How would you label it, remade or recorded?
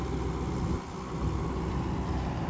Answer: recorded